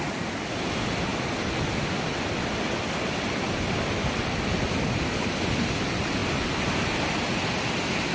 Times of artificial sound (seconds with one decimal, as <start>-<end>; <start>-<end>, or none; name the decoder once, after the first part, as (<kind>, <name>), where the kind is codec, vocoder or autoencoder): none